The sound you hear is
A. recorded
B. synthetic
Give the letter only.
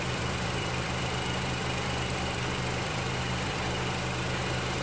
B